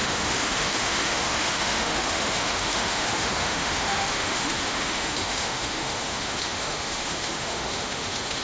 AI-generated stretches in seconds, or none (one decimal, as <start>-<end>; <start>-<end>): 0.0-8.4